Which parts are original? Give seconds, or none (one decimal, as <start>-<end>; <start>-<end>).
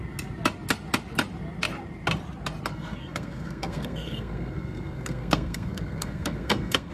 0.0-2.7